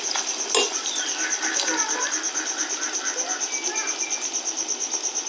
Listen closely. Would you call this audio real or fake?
real